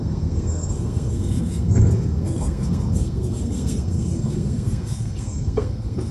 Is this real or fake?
fake